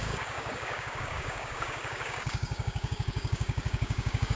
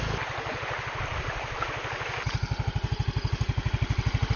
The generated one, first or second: first